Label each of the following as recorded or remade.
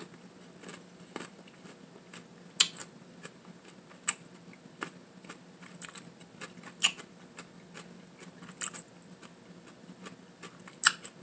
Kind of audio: recorded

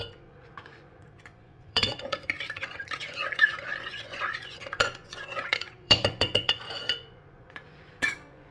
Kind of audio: remade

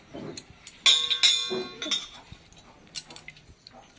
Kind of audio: recorded